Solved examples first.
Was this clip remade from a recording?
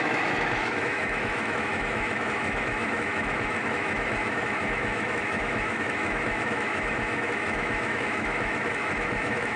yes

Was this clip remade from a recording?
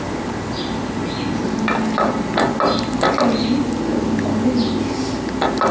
no